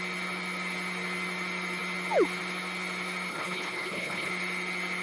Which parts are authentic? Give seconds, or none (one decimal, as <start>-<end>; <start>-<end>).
0.0-3.3; 4.3-5.0